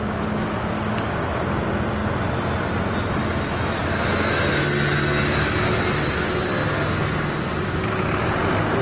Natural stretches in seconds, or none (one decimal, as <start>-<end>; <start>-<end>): 0.0-8.8